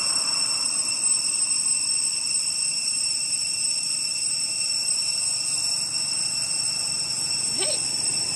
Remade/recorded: recorded